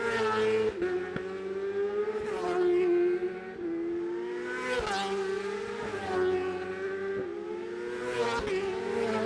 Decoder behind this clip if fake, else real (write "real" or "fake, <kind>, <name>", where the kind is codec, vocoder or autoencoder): real